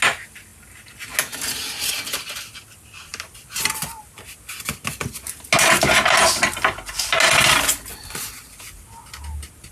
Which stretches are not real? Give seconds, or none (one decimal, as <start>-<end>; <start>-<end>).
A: none